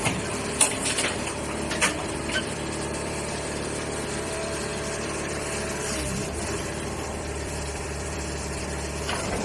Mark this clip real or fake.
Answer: fake